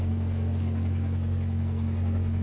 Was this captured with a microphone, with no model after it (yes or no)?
no